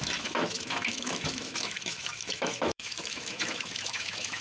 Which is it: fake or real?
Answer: fake